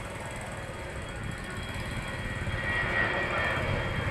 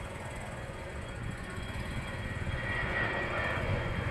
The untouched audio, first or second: first